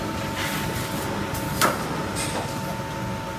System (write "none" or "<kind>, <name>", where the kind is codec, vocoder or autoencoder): none